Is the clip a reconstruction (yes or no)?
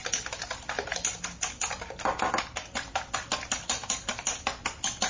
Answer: no